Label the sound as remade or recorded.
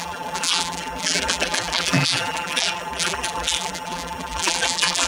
remade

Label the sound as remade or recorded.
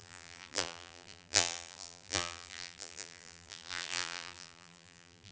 remade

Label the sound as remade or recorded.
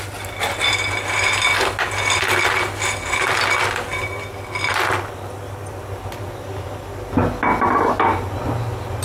recorded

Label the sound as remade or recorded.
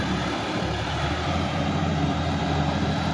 remade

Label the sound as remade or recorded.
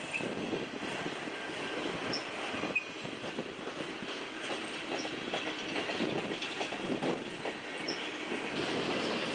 recorded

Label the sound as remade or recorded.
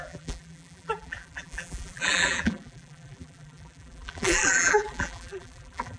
remade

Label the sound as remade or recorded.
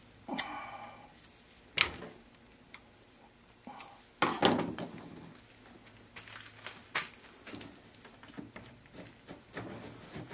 recorded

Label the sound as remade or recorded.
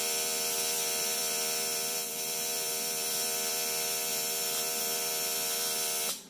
remade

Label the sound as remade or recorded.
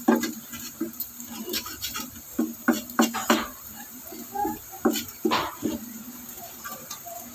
remade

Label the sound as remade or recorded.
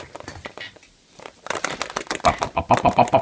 recorded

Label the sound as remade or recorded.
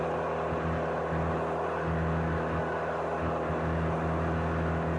recorded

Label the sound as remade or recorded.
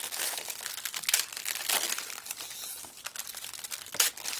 recorded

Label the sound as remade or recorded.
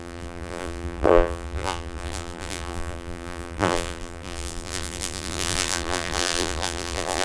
remade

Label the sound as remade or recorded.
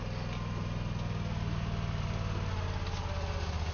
recorded